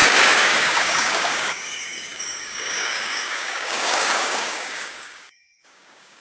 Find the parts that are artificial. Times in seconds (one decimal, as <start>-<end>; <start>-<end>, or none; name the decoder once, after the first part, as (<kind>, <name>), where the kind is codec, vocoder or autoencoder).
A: 0.0-6.2 (codec, DAC)